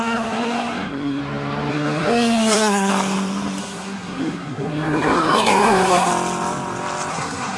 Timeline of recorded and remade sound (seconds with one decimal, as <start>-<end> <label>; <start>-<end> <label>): 0.0-1.2 remade; 1.2-1.7 recorded; 1.7-2.9 remade; 2.9-3.6 recorded; 3.6-6.1 remade; 6.1-7.1 recorded; 7.1-7.6 remade